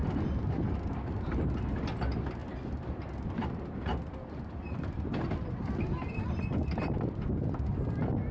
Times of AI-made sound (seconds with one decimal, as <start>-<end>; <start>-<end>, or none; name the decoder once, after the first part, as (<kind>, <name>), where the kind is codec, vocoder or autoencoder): none